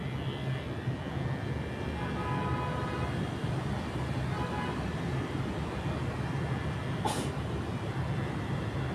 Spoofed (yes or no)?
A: no